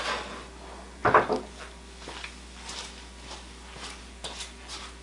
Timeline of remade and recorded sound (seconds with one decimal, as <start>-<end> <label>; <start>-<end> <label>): 0.0-5.0 recorded